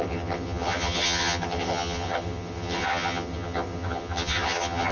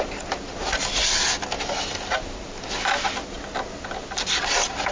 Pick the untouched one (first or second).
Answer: second